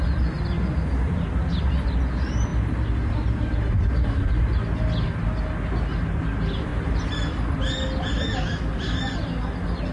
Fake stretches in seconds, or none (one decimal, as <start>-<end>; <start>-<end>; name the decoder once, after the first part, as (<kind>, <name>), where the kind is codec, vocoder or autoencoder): none